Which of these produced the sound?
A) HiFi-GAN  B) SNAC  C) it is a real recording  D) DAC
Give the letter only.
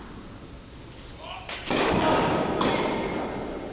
C